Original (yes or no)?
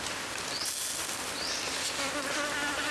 yes